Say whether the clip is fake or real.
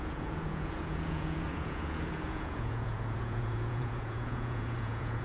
fake